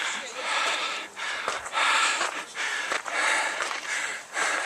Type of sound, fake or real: fake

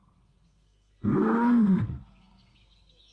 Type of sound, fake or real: fake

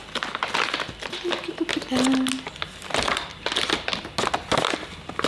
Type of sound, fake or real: real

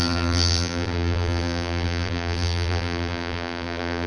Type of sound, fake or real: fake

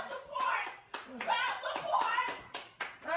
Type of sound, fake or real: fake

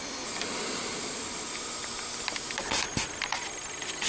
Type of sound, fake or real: real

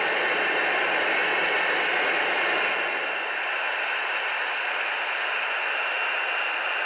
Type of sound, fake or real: real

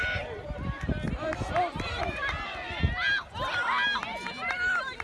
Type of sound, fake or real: real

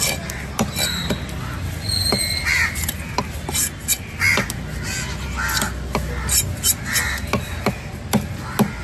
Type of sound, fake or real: real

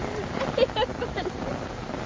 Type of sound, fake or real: real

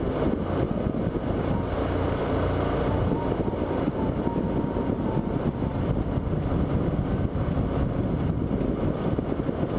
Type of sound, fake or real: real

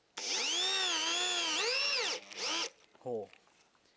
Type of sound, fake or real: real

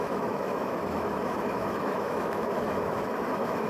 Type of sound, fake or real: fake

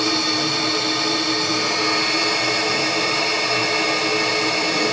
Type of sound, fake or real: real